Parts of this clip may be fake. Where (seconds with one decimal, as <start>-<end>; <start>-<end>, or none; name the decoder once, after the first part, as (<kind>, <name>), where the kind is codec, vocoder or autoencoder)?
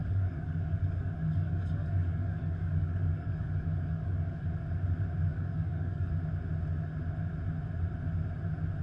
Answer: 0.0-4.5 (codec, DAC); 5.3-6.1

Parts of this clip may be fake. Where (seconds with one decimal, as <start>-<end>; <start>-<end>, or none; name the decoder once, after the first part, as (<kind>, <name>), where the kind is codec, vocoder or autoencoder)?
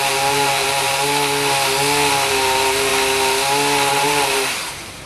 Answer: 0.0-1.0 (vocoder, BigVGAN v2); 2.3-2.9; 3.9-5.1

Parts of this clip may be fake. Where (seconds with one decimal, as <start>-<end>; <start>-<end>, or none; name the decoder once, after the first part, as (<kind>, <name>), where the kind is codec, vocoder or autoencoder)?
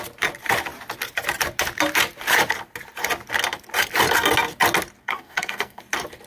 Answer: 5.0-5.8 (codec, SNAC)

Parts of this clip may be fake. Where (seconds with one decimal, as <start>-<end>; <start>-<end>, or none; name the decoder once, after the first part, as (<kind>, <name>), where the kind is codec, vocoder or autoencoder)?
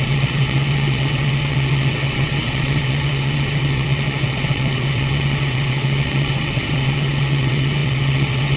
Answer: 0.0-8.6 (vocoder, WaveNeXt)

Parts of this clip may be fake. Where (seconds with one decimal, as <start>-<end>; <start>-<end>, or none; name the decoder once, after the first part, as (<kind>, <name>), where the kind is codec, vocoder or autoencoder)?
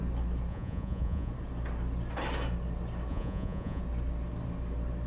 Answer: 0.5-1.3 (vocoder, Vocos); 3.1-3.8